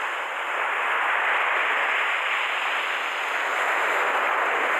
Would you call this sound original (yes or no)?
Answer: yes